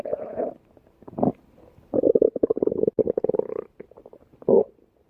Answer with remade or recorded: recorded